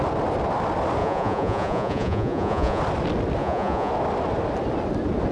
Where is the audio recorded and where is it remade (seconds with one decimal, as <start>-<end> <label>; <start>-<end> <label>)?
0.0-1.0 recorded; 1.0-2.8 remade; 2.8-3.4 recorded; 3.4-3.9 remade; 3.9-5.3 recorded